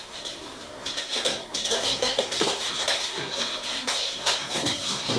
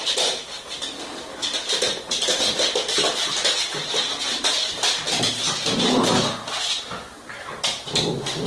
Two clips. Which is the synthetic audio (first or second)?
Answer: first